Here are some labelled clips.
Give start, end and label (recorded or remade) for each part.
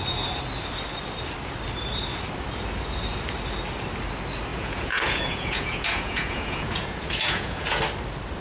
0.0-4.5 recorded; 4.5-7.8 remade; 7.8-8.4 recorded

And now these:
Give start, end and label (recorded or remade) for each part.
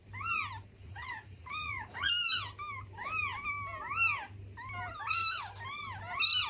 0.0-0.8 recorded; 0.8-2.1 remade; 2.1-6.5 recorded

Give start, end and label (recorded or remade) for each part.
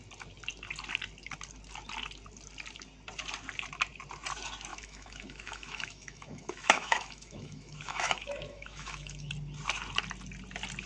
0.0-4.7 recorded; 4.7-9.3 remade; 9.3-10.9 recorded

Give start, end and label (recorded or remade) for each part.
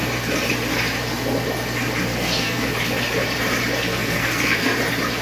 0.0-2.1 recorded; 2.1-2.7 remade; 2.7-3.9 recorded; 3.9-4.8 remade; 4.8-5.2 recorded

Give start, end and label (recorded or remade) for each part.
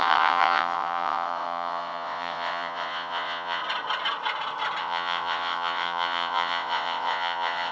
0.0-3.6 remade; 3.6-4.8 recorded; 4.8-7.7 remade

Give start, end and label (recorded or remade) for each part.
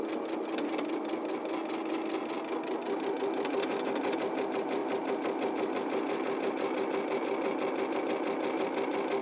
0.0-9.2 recorded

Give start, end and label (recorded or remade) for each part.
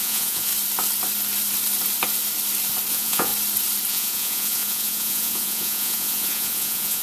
0.0-0.5 remade; 0.5-2.9 recorded; 2.9-3.3 remade; 3.3-3.9 recorded; 3.9-7.0 remade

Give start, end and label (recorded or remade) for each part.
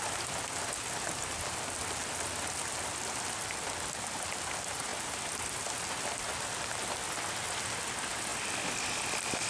0.0-9.5 recorded